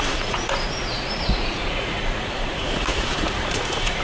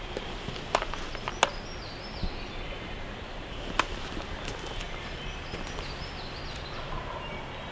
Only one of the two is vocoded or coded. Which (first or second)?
first